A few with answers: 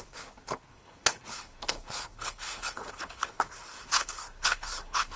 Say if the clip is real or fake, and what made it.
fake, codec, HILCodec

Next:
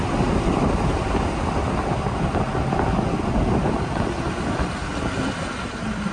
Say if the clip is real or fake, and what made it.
real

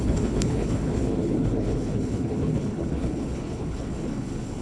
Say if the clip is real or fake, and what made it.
fake, codec, HILCodec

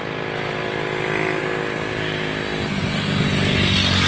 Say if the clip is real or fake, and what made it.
real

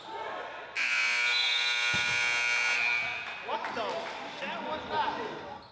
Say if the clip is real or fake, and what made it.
real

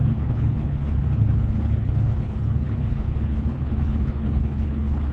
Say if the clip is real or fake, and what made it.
fake, codec, HILCodec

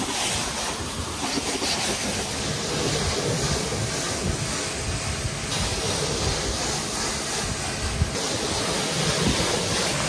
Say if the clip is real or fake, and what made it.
real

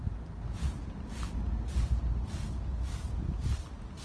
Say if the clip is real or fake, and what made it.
real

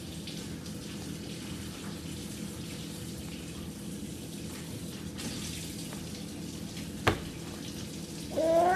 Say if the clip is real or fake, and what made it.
real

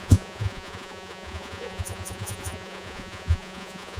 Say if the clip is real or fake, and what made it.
fake, vocoder, Vocos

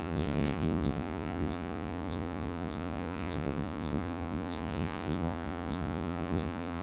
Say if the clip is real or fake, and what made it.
fake, vocoder, Vocos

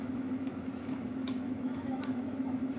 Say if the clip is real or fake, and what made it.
fake, autoencoder, DAC-VAE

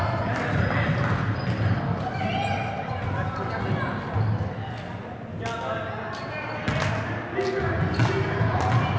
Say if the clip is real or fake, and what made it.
real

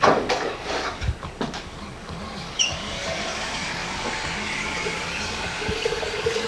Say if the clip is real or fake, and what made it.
fake, codec, DAC